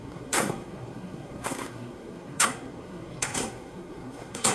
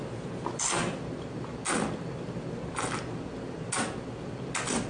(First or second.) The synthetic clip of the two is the first